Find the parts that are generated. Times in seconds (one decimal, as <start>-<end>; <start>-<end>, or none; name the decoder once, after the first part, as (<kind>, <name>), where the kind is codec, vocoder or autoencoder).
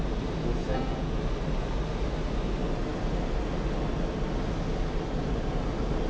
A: 0.6-1.2 (vocoder, Vocos)